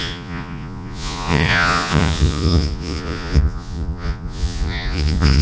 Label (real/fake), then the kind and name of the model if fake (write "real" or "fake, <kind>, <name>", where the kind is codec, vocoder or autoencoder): fake, vocoder, Vocos